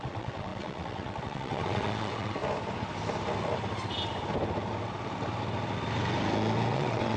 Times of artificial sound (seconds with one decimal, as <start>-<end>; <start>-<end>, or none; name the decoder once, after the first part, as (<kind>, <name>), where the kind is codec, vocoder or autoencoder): 0.0-2.4 (vocoder, WaveNeXt); 6.7-7.2